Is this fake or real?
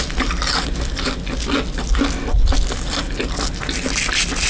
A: real